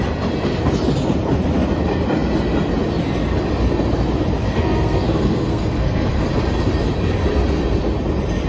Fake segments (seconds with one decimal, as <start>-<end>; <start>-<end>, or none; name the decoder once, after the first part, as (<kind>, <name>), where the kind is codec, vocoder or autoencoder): 4.4-6.2 (codec, SNAC)